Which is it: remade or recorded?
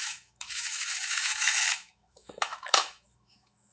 remade